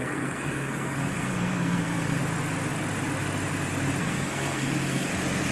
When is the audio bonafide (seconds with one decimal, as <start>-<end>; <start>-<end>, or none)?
2.2-4.0; 5.1-5.5